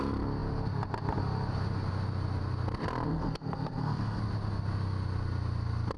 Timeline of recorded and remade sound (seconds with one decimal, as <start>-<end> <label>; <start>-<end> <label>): 0.0-3.1 recorded; 3.1-4.2 remade; 4.2-6.0 recorded